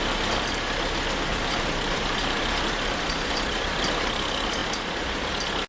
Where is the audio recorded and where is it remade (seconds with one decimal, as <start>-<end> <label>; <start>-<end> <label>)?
0.0-1.3 recorded; 1.3-3.7 remade; 3.7-4.6 recorded; 4.6-5.3 remade; 5.3-5.7 recorded